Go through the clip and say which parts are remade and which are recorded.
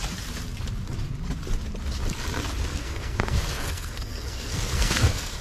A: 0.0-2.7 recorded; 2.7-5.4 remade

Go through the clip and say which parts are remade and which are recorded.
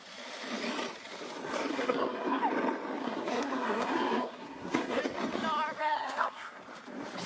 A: 0.0-1.7 recorded; 1.7-2.4 remade; 2.4-3.0 recorded; 3.0-5.0 remade; 5.0-5.8 recorded; 5.8-6.6 remade; 6.6-7.3 recorded